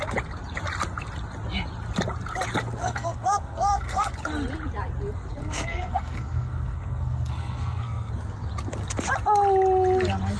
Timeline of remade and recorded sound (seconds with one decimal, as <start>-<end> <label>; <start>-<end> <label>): 0.0-2.8 recorded; 2.8-4.1 remade; 4.1-5.4 recorded; 5.4-8.1 remade; 8.1-10.4 recorded